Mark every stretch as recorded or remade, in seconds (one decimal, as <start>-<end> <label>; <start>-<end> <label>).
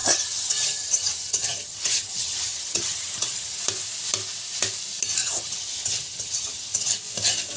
0.0-3.6 remade; 3.6-5.2 recorded; 5.2-6.9 remade; 6.9-7.6 recorded